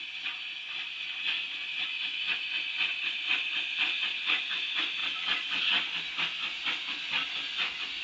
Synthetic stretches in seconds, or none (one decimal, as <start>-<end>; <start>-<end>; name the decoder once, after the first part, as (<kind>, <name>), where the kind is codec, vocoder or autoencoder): 2.9-4.5 (vocoder, Vocos); 5.0-5.7